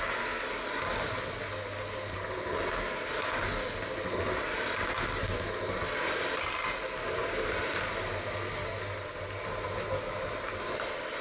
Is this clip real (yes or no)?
yes